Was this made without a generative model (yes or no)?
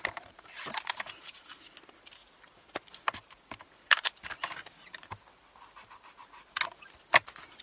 no